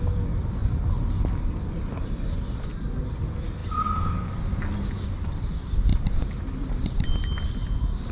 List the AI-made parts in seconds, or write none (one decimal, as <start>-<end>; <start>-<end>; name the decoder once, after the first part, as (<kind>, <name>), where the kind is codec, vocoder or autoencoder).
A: none